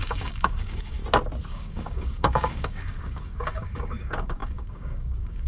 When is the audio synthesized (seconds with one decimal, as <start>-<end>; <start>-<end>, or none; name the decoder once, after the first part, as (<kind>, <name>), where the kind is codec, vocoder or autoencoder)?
0.0-1.0 (codec, DAC); 1.5-5.5